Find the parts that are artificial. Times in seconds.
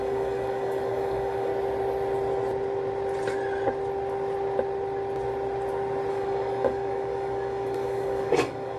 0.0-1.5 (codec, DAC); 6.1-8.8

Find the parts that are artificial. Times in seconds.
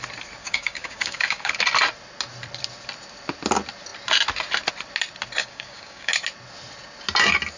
0.4-1.5 (codec, DAC); 5.4-6.1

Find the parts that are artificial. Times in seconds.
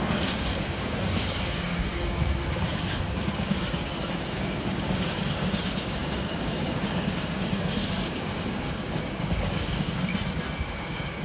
0.0-10.1 (codec, DAC); 10.7-11.2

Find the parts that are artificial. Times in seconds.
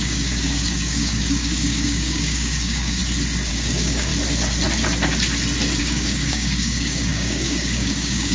0.0-3.0 (codec, DAC); 3.5-4.1; 5.8-8.3